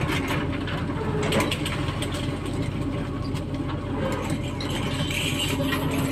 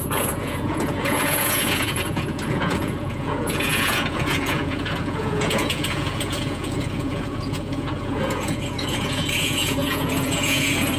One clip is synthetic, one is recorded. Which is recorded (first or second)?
first